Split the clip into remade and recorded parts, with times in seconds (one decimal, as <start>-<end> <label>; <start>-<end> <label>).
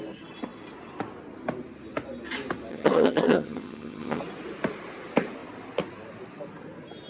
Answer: 0.0-2.7 recorded; 2.7-4.2 remade; 4.2-7.1 recorded